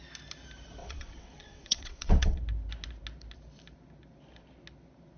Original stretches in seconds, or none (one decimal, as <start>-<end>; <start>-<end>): 0.0-0.8; 2.4-5.2